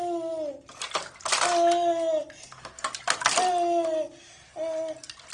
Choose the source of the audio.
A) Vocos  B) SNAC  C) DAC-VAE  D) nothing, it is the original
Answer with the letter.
D